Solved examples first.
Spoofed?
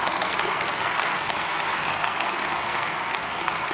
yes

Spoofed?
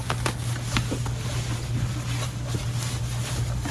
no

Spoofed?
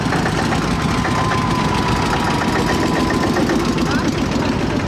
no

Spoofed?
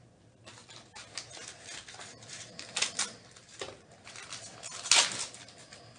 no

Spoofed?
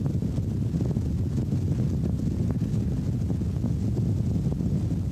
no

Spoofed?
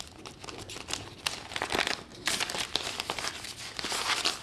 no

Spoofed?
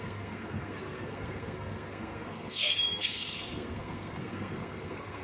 yes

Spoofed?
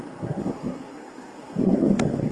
yes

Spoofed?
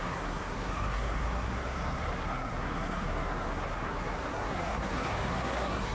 yes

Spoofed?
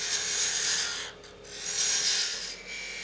no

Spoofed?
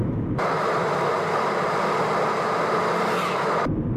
no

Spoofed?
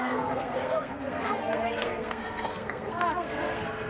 yes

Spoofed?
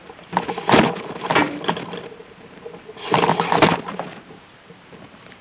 no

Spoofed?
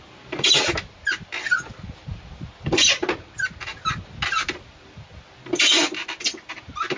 no